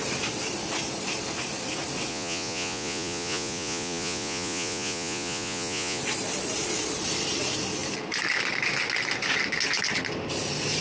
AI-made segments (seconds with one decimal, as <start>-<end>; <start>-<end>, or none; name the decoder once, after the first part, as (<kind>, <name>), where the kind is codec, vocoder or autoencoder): 2.1-6.0 (vocoder, Vocos)